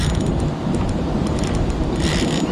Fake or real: real